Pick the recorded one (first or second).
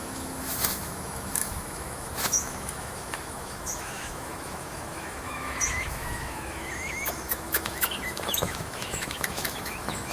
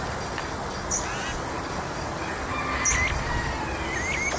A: second